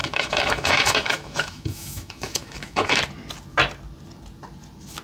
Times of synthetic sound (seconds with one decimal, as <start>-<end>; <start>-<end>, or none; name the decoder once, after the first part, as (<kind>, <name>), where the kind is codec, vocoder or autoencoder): 0.0-3.0 (autoencoder, DAC-VAE)